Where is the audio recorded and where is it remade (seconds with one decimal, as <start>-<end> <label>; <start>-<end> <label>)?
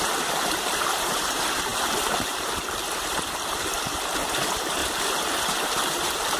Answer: 0.0-4.8 remade; 4.8-5.4 recorded; 5.4-6.4 remade